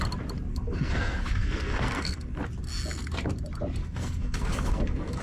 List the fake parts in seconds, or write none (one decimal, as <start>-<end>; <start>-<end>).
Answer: 0.5-2.4; 3.8-5.2